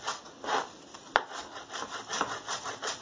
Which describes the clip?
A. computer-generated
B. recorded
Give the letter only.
B